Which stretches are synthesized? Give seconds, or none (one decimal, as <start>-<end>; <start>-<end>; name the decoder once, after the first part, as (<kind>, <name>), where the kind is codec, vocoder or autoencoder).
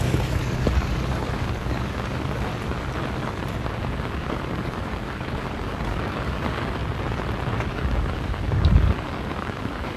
0.0-2.5 (codec, DAC); 3.9-6.8; 7.5-10.0